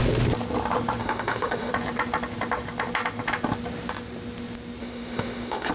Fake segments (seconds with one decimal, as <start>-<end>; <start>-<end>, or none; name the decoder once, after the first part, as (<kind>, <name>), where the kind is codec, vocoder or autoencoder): 1.0-1.7 (autoencoder, DAC-VAE); 4.8-5.7